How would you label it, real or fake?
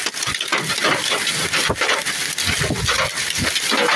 real